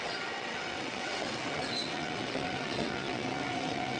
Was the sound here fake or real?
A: fake